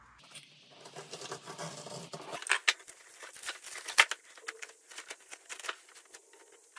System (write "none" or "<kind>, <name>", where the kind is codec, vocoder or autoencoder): none